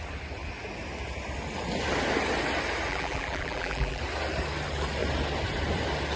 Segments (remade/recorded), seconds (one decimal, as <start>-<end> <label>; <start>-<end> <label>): 0.0-2.9 recorded; 2.9-4.0 remade; 4.0-6.2 recorded